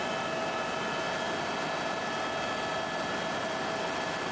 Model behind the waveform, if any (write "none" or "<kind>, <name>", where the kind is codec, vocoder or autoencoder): none